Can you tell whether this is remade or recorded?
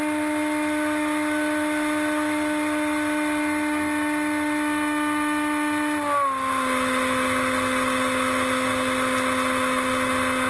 recorded